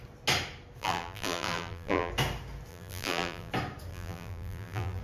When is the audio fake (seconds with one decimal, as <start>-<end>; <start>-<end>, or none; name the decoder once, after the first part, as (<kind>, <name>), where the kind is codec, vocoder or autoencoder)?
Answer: 0.8-2.1 (vocoder, BigVGAN v2); 2.7-3.5; 3.9-5.0